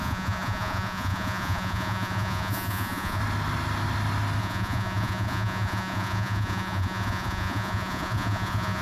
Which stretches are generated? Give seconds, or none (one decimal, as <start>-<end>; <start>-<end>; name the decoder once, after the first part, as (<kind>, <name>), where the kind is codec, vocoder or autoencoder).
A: 0.0-3.2 (vocoder, Vocos); 4.4-8.8